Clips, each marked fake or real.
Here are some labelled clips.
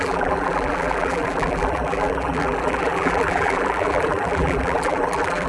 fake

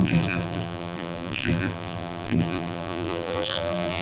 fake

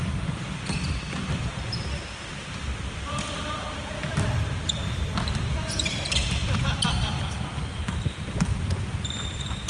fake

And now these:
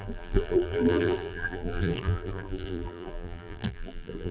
fake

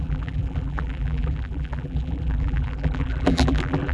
fake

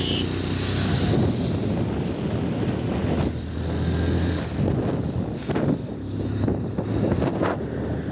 real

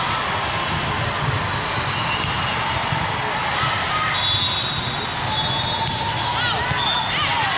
real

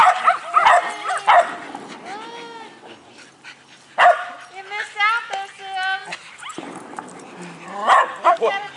real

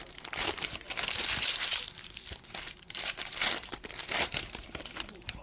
fake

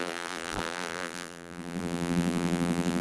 fake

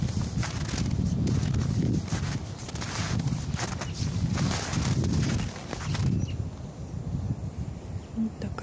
real